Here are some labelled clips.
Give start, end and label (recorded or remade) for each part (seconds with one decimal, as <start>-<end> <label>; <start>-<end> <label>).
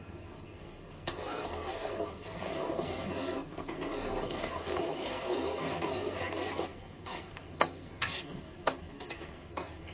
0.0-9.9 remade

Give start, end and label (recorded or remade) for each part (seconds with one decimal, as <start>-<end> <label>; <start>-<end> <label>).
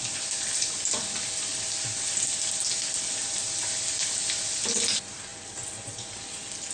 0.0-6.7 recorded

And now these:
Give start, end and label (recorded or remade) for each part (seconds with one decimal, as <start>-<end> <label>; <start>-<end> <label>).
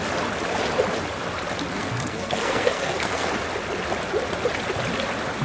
0.0-1.7 recorded; 1.7-3.3 remade; 3.3-5.4 recorded